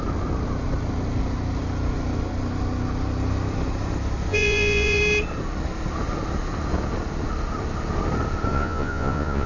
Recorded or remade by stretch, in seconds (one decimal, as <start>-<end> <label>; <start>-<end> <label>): 0.0-4.3 recorded; 4.3-5.0 remade; 5.0-8.5 recorded; 8.5-9.5 remade